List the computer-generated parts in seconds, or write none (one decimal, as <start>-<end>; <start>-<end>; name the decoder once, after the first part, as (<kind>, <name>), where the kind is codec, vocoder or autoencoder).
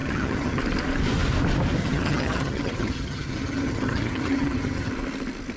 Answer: 0.0-0.6 (vocoder, HiFi-GAN); 1.8-4.9